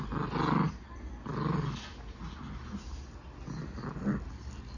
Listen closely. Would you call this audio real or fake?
real